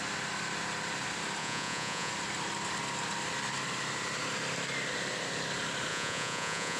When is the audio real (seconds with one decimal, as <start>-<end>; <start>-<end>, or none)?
0.0-1.4; 2.1-5.9